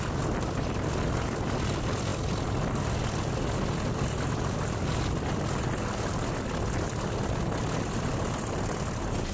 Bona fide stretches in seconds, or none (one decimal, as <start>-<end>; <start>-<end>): 0.0-9.3